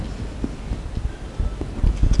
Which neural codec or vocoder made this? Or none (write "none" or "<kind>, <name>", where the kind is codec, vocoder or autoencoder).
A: none